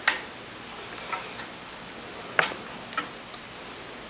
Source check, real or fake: real